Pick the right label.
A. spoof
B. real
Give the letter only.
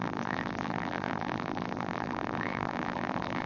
A